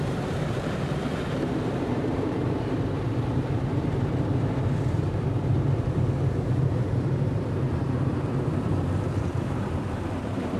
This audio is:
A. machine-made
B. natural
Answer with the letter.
A